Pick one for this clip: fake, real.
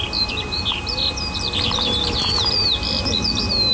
real